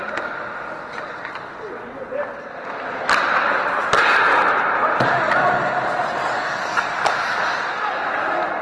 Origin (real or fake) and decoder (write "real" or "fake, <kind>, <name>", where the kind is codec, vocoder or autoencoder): real